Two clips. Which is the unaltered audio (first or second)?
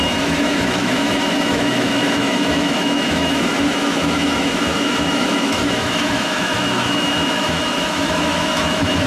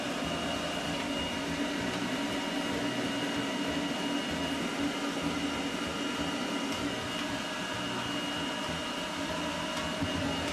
second